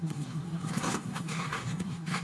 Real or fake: fake